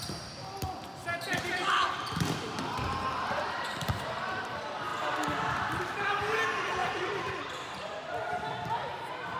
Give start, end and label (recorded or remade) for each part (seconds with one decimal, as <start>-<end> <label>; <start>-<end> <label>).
0.0-1.0 recorded; 1.0-2.7 remade; 2.7-6.8 recorded; 6.8-7.3 remade; 7.3-9.4 recorded